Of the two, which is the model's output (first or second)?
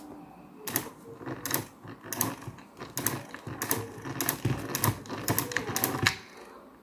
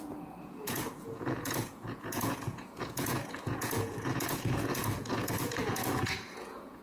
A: second